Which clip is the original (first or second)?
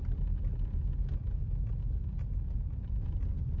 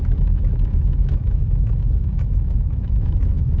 first